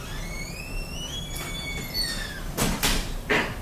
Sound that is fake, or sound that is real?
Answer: real